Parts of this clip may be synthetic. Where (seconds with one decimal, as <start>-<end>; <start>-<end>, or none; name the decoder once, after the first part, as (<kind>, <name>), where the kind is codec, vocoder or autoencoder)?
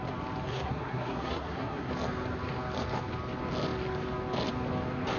0.5-1.9 (codec, SNAC)